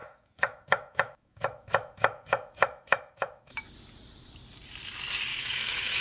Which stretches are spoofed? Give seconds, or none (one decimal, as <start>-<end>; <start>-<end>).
0.0-3.6; 5.3-6.0